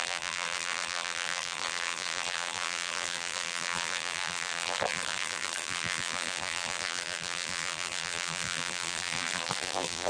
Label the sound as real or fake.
fake